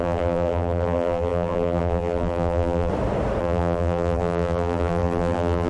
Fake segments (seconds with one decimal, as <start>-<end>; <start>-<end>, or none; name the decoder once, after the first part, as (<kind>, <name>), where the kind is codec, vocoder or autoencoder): 0.0-2.9 (vocoder, BigVGAN v2); 3.4-5.7